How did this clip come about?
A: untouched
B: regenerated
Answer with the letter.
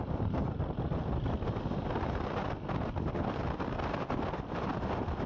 A